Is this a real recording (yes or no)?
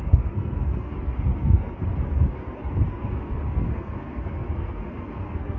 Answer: no